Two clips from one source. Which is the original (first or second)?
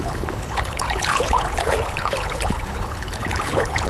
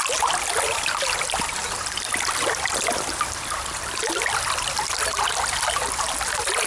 second